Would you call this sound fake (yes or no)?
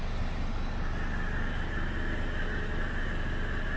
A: no